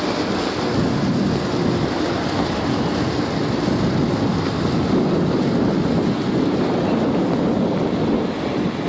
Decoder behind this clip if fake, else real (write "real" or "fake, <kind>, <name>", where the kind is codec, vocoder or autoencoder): real